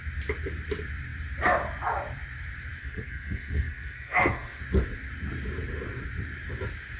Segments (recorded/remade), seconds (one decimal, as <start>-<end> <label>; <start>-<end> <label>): 0.0-2.8 recorded; 2.8-4.6 remade; 4.6-7.0 recorded